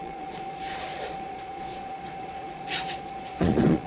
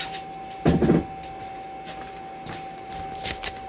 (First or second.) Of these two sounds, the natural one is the second